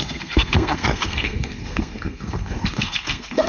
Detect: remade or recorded remade